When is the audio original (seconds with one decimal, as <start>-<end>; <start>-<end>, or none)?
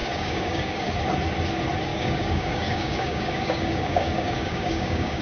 0.9-1.9